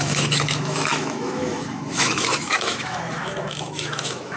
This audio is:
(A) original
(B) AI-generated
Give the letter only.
B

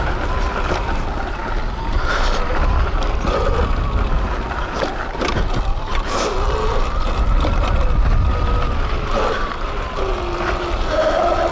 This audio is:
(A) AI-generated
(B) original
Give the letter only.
B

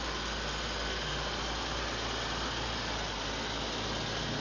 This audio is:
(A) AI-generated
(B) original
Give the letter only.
B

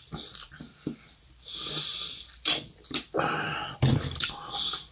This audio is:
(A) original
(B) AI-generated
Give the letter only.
B